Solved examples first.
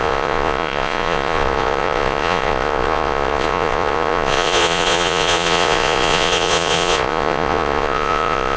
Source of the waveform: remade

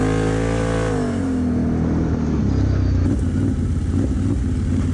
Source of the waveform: recorded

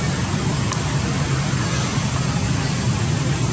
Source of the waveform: recorded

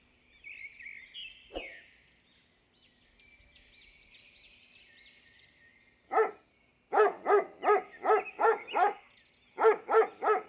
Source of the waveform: recorded